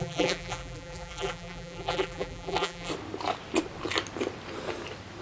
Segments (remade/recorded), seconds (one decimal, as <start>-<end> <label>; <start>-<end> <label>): 0.0-2.9 remade; 2.9-5.2 recorded